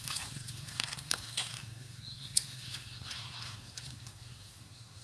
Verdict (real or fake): fake